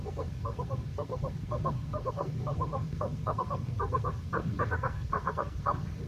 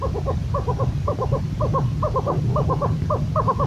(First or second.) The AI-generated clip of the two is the first